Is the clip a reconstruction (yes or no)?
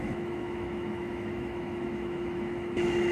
yes